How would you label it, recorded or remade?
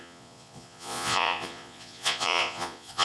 remade